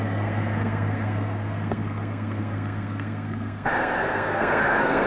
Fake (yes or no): yes